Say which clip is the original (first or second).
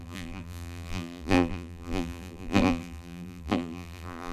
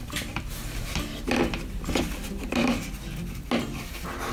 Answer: second